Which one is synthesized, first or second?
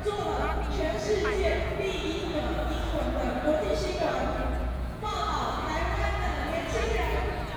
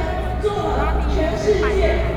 first